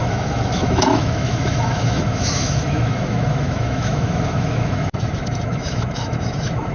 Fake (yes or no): yes